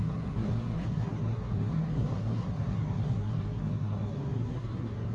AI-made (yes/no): yes